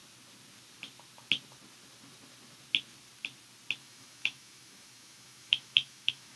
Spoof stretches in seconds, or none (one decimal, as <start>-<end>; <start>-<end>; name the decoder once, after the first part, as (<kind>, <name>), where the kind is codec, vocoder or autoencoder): 3.8-6.4 (autoencoder, DAC-VAE)